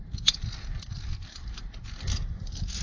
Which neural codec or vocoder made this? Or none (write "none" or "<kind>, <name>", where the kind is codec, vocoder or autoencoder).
none